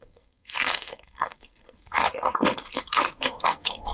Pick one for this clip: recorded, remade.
remade